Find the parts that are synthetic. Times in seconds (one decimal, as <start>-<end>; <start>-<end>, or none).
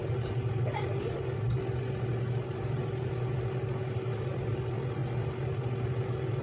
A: 2.1-3.1